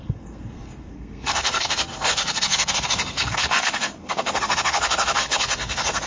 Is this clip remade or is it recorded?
remade